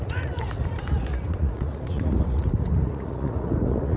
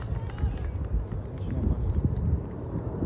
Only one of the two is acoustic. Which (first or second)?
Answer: second